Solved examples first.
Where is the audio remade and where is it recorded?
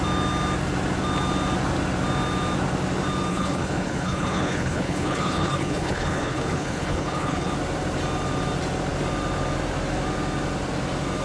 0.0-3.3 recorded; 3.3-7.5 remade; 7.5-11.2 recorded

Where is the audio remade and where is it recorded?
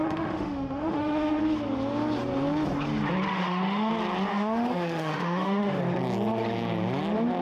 0.0-1.4 remade; 1.4-3.3 recorded; 3.3-3.9 remade; 3.9-4.3 recorded; 4.3-5.8 remade; 5.8-7.4 recorded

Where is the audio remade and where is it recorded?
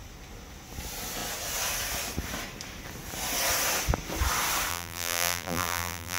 0.0-4.7 recorded; 4.7-6.2 remade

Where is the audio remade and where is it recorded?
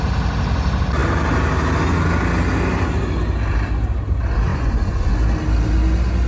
0.0-4.5 recorded; 4.5-5.1 remade; 5.1-6.3 recorded